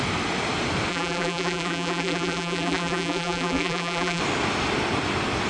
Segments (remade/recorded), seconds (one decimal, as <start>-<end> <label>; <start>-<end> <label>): 0.0-0.9 recorded; 0.9-4.2 remade; 4.2-5.5 recorded